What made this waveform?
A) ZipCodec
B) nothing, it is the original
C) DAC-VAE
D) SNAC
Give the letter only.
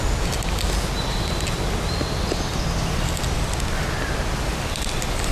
B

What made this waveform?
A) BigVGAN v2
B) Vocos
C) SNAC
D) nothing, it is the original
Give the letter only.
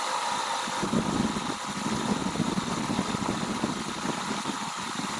D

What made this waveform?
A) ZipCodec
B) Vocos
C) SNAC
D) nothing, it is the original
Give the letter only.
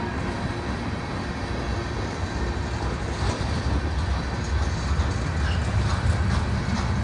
D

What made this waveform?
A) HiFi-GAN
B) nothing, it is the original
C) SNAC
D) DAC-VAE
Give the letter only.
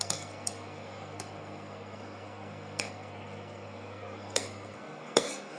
C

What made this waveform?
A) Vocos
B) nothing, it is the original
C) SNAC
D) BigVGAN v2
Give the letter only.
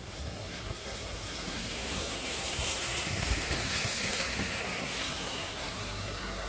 C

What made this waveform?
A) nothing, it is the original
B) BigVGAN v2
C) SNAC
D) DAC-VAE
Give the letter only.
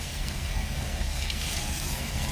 C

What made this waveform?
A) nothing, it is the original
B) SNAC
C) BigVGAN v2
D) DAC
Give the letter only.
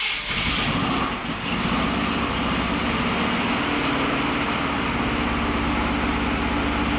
A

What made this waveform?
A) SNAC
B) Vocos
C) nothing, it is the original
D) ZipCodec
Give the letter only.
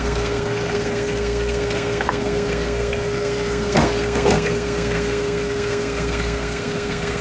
A